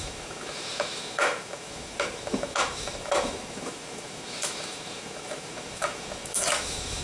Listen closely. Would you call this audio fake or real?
fake